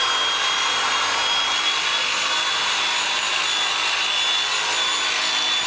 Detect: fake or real real